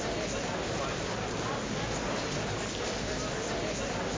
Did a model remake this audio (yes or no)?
no